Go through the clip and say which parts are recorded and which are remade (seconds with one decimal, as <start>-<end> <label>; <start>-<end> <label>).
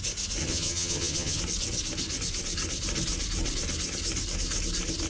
0.0-0.4 recorded; 0.4-1.4 remade; 1.4-5.1 recorded